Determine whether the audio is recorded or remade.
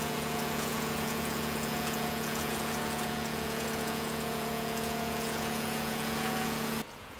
remade